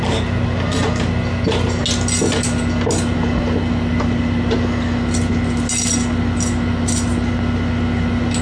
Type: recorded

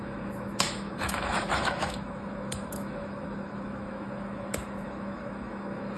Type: remade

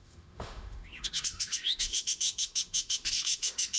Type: remade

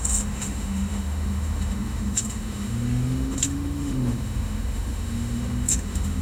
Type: remade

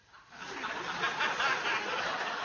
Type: recorded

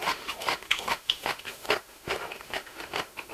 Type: remade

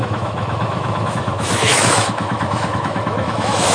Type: remade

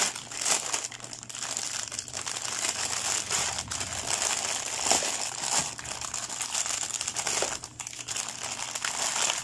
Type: recorded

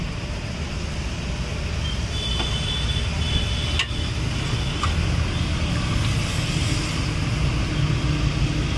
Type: recorded